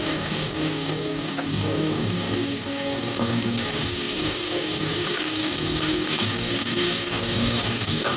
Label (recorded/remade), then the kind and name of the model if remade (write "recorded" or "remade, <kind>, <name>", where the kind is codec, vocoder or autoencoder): remade, codec, DAC